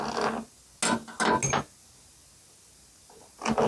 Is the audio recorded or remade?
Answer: recorded